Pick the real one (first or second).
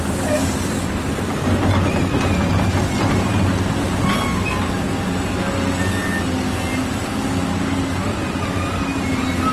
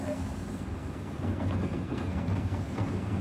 first